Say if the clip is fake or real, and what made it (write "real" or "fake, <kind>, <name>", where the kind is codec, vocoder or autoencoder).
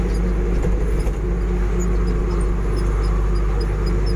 real